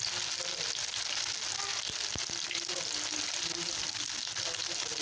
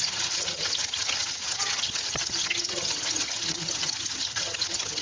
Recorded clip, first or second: first